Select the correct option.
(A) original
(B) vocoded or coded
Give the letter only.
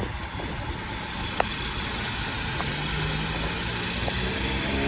A